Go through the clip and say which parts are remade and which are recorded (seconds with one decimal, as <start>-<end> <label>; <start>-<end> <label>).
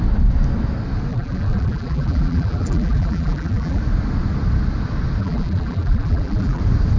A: 0.0-1.1 recorded; 1.1-3.8 remade; 3.8-5.2 recorded; 5.2-6.6 remade; 6.6-7.0 recorded